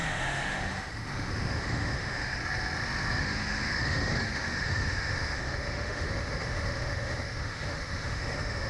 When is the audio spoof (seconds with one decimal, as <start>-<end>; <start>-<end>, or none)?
0.0-2.4; 3.2-8.7